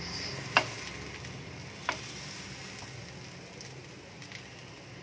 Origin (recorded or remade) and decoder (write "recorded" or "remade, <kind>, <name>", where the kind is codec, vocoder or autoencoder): recorded